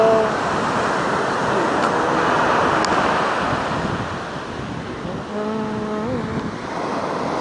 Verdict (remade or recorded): recorded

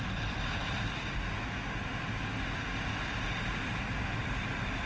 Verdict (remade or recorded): recorded